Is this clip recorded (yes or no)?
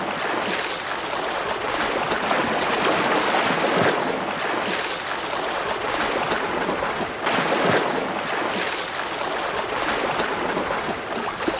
yes